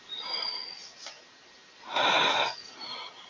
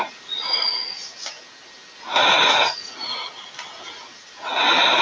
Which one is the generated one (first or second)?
first